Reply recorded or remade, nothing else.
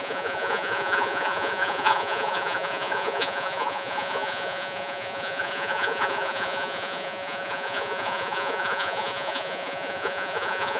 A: remade